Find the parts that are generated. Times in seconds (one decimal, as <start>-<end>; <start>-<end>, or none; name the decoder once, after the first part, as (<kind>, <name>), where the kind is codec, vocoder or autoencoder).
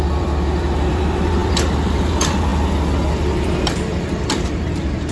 0.0-2.5 (vocoder, BigVGAN v2); 3.6-5.1